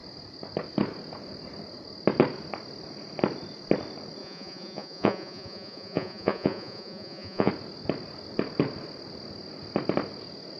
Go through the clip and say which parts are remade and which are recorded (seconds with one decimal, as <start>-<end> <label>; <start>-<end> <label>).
0.0-4.2 recorded; 4.2-7.5 remade; 7.5-10.6 recorded